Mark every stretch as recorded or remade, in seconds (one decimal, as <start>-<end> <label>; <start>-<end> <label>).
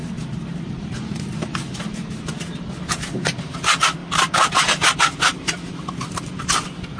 0.0-2.5 remade; 2.5-4.0 recorded; 4.0-6.4 remade; 6.4-7.0 recorded